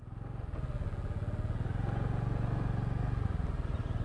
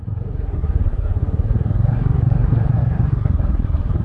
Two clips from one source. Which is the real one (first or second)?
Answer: first